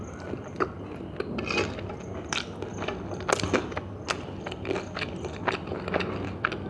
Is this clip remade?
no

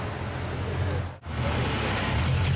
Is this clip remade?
no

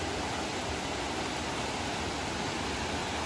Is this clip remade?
no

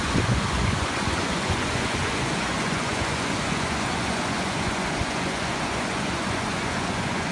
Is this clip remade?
yes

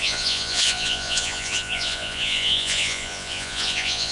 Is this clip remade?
yes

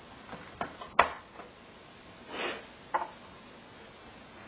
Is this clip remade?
no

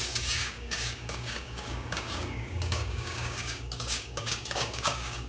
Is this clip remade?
yes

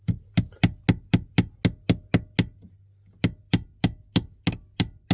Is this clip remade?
no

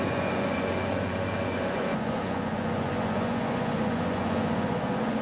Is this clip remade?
yes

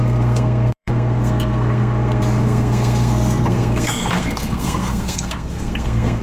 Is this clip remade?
yes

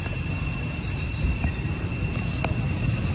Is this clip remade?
no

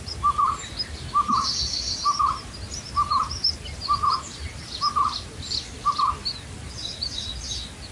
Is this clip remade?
no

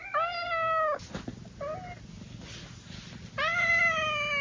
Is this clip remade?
no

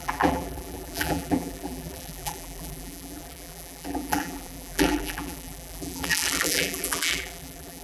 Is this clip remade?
yes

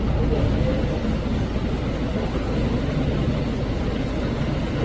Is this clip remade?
no